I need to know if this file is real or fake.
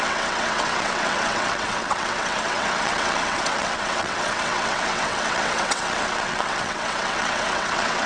fake